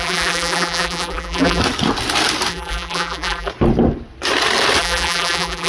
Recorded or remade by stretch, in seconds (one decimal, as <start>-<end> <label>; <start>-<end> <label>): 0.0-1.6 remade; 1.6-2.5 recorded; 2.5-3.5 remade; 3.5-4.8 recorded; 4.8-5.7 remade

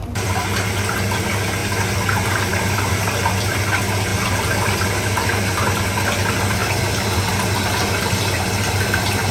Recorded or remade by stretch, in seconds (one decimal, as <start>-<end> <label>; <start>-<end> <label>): 0.0-4.1 recorded; 4.1-5.0 remade; 5.0-9.3 recorded

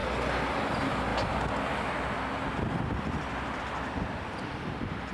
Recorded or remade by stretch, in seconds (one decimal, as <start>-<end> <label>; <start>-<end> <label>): 0.0-5.1 recorded